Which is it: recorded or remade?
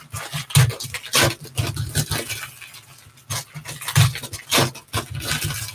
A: recorded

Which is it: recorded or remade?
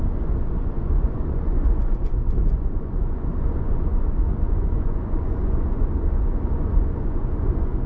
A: remade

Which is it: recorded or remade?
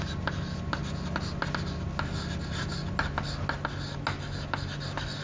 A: recorded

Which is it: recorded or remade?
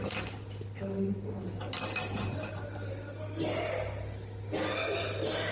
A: recorded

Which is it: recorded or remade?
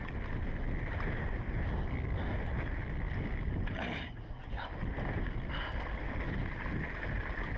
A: recorded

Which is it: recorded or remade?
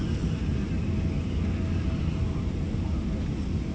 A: recorded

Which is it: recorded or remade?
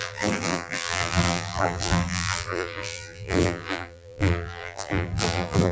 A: remade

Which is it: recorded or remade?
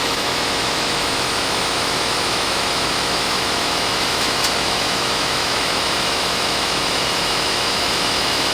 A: remade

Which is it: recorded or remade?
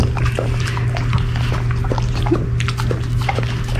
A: recorded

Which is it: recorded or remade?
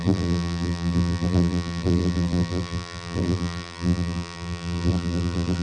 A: remade